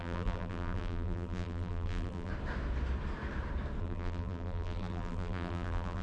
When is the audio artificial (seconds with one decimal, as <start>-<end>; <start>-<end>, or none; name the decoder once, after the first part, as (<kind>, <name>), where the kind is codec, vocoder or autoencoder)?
0.0-2.3 (vocoder, BigVGAN v2); 3.8-6.0